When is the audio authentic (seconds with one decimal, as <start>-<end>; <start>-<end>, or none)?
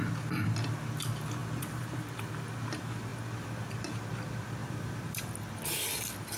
0.0-1.4; 2.2-4.6; 5.3-6.4